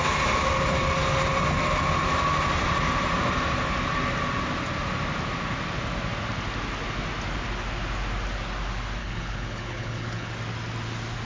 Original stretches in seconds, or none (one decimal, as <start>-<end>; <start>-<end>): 0.0-9.0; 10.3-11.3